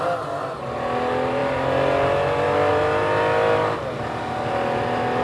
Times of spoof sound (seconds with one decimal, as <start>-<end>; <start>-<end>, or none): none